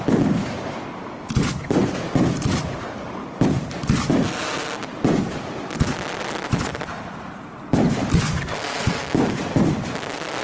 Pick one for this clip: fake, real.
real